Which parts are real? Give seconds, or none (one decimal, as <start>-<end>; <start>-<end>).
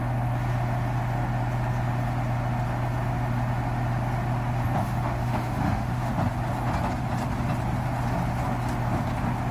0.0-4.8; 6.1-9.5